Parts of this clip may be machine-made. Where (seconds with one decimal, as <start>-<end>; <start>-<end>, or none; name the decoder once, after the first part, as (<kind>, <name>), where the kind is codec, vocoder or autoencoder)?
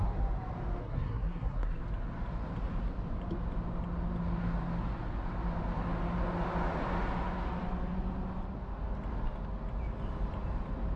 0.8-1.8 (codec, SNAC)